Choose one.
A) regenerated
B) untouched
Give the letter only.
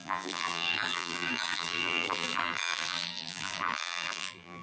A